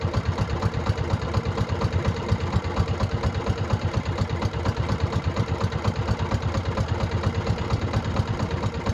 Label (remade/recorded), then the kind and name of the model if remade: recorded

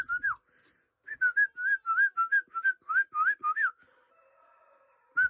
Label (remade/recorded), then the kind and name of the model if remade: recorded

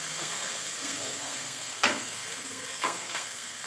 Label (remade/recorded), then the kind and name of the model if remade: remade, codec, SNAC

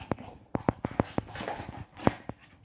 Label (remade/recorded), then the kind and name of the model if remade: recorded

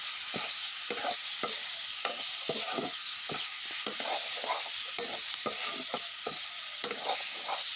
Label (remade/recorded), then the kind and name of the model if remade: recorded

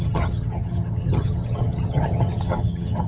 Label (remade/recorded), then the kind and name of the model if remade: remade, vocoder, HiFi-GAN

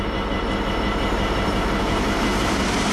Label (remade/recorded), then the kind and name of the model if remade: remade, vocoder, BigVGAN v2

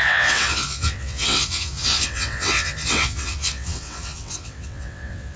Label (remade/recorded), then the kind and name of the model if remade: remade, vocoder, WaveNeXt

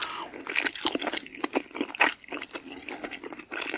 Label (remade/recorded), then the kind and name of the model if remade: recorded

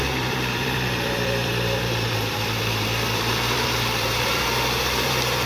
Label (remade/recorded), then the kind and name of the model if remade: remade, vocoder, BigVGAN v2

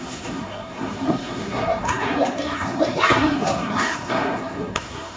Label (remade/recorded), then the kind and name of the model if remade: remade, codec, SNAC